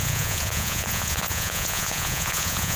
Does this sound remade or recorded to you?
remade